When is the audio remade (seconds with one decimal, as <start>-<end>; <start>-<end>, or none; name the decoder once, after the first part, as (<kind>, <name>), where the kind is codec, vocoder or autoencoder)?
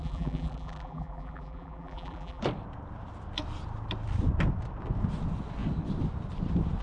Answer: 0.0-2.4 (vocoder, BigVGAN v2)